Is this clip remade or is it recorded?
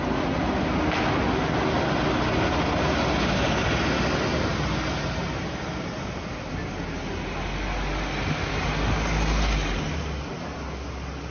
recorded